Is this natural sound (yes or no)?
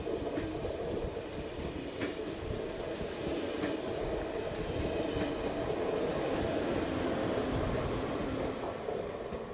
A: yes